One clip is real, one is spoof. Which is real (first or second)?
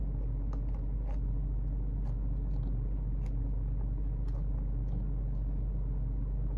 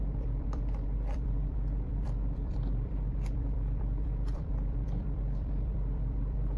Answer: first